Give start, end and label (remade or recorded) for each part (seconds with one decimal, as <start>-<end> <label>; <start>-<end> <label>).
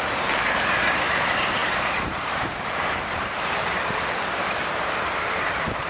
0.0-5.9 remade